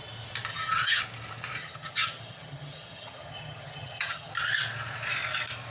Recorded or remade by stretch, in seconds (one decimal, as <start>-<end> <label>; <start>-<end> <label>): 0.0-0.5 recorded; 0.5-1.0 remade; 1.0-1.6 recorded; 1.6-4.3 remade; 4.3-5.7 recorded